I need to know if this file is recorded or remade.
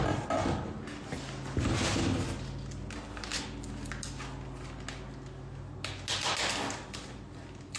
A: recorded